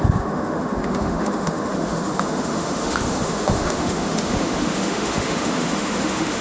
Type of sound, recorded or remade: remade